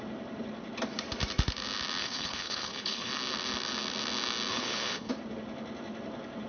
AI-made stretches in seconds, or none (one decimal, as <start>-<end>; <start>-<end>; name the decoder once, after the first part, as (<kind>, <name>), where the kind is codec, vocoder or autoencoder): 2.0-3.1 (codec, HILCodec); 4.5-5.1